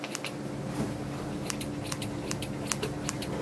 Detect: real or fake real